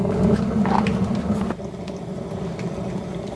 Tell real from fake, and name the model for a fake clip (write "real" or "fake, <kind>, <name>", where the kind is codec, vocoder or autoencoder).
real